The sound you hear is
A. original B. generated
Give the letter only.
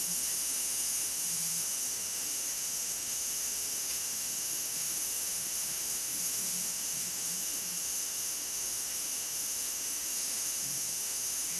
B